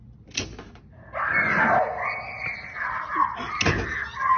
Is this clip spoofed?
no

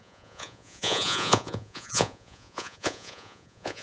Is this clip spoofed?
yes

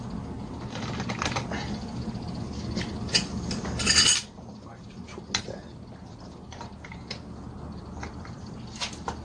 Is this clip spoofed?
no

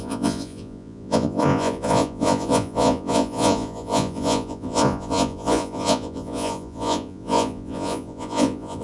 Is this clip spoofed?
yes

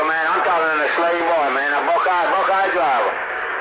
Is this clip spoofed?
yes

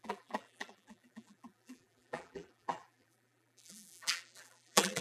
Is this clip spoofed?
yes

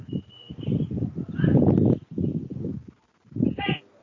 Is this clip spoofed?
no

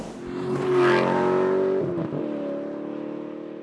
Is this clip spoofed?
no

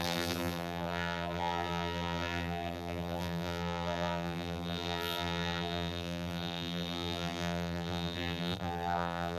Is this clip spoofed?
yes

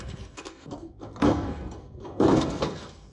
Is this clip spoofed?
yes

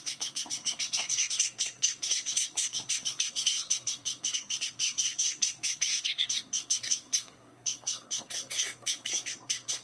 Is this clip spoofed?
yes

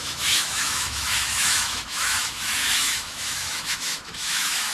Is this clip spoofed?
yes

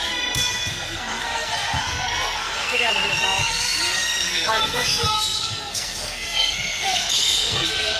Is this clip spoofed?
yes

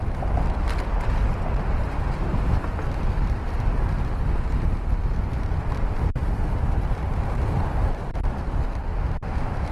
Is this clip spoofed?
no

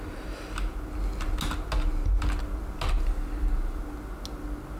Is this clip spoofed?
no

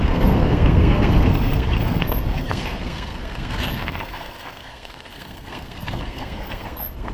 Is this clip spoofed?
yes